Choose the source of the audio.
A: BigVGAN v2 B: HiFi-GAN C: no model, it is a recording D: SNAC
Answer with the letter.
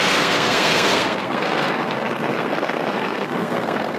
D